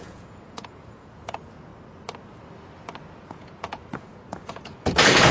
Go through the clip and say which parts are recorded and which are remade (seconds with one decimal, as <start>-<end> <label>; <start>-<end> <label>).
0.0-1.7 remade; 1.7-3.1 recorded; 3.1-5.3 remade